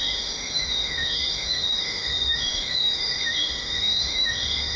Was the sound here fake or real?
fake